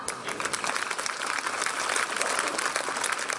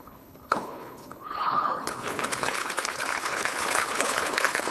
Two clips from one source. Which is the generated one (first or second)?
second